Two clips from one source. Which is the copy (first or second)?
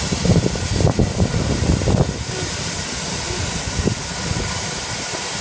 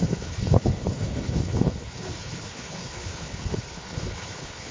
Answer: second